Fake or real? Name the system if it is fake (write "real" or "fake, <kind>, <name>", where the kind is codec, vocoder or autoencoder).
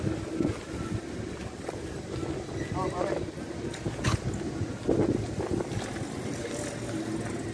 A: real